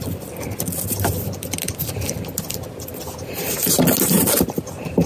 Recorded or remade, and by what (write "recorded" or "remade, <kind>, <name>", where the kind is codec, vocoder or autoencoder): remade, vocoder, BigVGAN v2